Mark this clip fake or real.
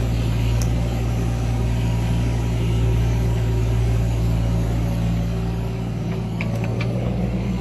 fake